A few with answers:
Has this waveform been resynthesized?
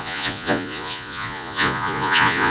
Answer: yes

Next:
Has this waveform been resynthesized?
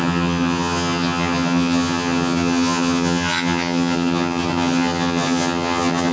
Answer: yes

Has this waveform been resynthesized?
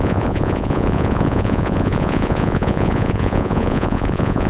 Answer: yes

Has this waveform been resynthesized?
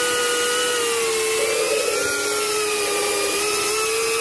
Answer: no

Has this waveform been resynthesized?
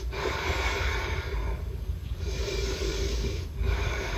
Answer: yes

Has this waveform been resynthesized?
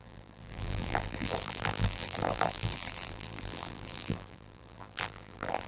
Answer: yes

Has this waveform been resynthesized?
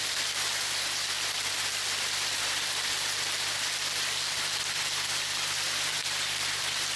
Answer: no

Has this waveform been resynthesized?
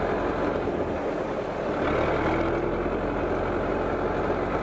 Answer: no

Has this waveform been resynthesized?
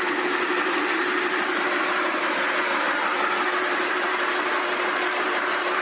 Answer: no